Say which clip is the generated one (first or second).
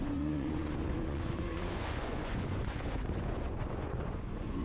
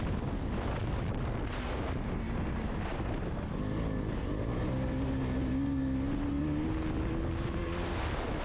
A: first